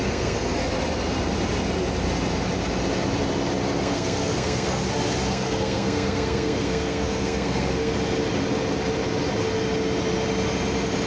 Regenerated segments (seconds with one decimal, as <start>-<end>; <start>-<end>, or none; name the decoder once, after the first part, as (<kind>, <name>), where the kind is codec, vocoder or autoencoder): 0.0-0.6 (codec, SNAC); 3.8-4.8; 5.3-7.9